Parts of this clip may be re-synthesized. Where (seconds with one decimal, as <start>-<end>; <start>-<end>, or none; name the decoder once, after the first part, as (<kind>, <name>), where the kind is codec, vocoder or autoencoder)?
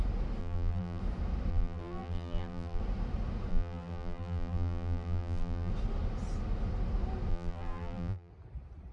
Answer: 0.4-1.0 (vocoder, BigVGAN v2); 1.5-2.8; 3.5-5.7; 7.3-8.3